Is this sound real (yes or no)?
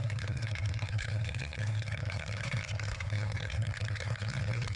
no